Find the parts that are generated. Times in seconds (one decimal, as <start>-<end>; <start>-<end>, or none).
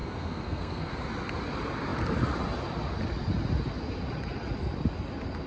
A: 0.0-0.9